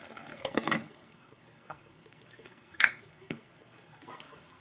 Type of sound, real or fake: fake